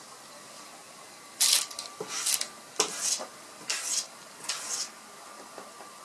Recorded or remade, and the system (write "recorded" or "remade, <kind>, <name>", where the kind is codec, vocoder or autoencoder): recorded